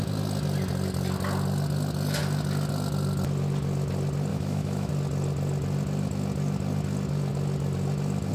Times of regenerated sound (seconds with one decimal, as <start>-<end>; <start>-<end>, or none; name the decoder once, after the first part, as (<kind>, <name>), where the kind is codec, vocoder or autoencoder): 4.3-4.9 (autoencoder, DAC-VAE)